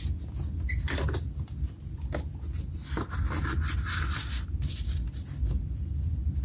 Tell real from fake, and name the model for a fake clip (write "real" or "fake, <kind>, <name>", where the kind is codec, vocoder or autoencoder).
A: real